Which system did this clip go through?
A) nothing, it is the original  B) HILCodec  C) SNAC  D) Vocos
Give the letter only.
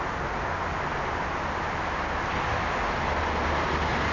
A